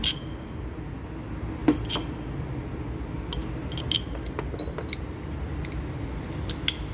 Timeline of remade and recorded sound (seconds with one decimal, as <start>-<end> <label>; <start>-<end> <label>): 0.0-6.9 recorded